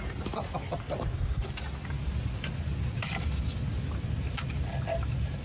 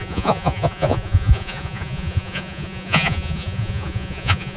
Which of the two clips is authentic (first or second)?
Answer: first